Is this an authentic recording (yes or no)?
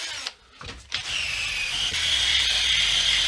yes